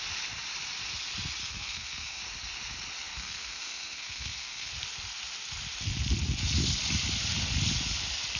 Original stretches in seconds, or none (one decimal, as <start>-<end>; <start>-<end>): 0.0-1.4; 2.2-3.1; 4.7-8.4